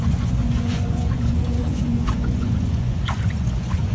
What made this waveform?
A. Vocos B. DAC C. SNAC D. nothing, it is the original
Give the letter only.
A